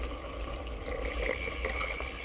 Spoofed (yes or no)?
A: no